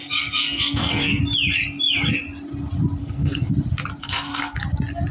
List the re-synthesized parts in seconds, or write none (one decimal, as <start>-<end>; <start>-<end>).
0.0-1.2; 3.0-3.5; 4.0-4.6